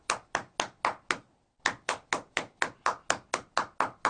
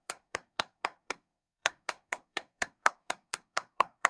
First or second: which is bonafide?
first